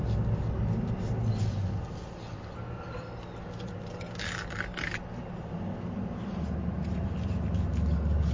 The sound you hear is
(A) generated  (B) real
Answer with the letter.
B